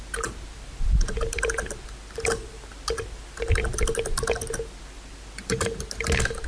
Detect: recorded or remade recorded